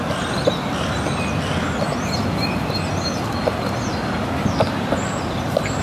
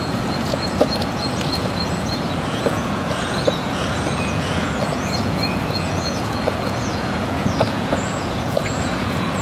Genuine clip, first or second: first